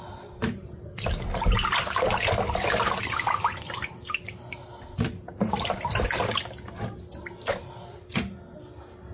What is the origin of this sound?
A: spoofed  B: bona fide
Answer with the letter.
B